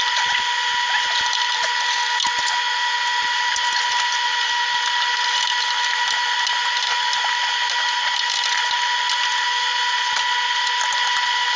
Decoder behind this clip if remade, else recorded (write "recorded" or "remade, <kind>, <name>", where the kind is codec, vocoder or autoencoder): recorded